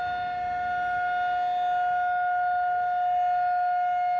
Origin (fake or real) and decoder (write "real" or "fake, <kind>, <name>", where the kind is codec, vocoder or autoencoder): real